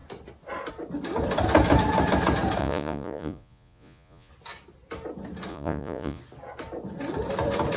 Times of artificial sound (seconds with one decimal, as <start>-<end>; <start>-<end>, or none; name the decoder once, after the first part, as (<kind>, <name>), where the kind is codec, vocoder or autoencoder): 2.6-4.3 (vocoder, Vocos); 5.5-6.2